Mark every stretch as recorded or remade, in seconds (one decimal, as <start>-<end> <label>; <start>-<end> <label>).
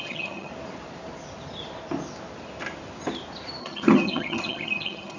0.0-0.5 remade; 0.5-3.6 recorded; 3.6-5.2 remade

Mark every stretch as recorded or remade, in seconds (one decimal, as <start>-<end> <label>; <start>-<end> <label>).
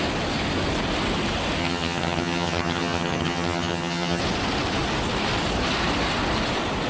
0.0-1.6 recorded; 1.6-4.2 remade; 4.2-6.9 recorded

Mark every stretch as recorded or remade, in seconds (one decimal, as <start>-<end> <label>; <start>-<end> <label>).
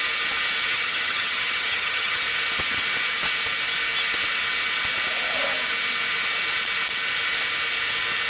0.0-0.7 recorded; 0.7-2.2 remade; 2.2-8.3 recorded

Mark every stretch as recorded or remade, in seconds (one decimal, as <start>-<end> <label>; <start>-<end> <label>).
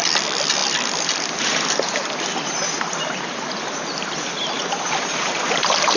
0.0-6.0 recorded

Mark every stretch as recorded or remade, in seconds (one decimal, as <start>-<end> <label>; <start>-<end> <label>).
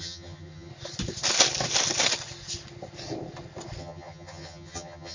0.0-0.7 remade; 0.7-3.8 recorded; 3.8-5.1 remade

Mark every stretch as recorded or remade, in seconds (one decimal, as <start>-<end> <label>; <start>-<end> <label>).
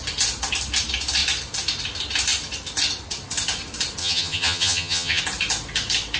0.0-4.0 recorded; 4.0-5.2 remade; 5.2-6.2 recorded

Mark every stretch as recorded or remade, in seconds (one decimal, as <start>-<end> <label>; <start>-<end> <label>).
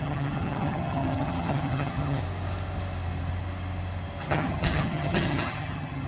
0.0-2.2 remade; 2.2-4.3 recorded; 4.3-6.1 remade